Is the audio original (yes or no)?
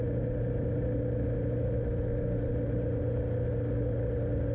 yes